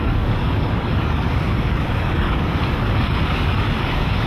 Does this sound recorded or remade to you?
remade